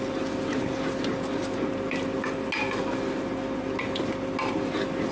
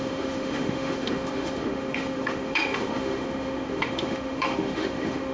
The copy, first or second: second